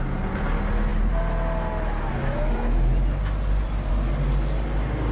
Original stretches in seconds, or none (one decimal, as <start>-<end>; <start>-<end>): 0.0-5.1